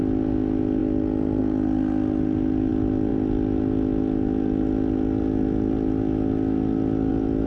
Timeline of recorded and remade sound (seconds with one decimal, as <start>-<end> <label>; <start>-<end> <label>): 0.0-7.5 recorded